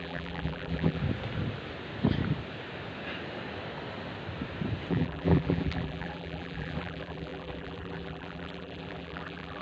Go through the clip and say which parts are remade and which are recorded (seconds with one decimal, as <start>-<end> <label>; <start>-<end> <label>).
0.0-1.0 remade; 1.0-4.9 recorded; 4.9-9.6 remade